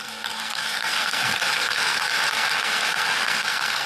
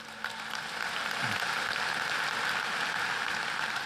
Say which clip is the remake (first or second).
first